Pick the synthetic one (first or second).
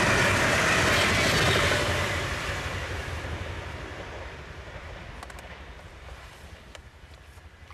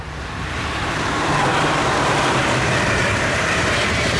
second